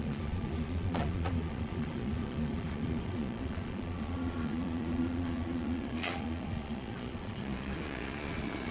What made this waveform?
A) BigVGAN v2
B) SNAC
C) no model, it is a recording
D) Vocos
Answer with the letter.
D